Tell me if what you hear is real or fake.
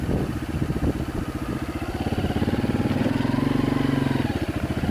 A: real